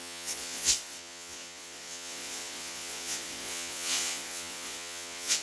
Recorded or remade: remade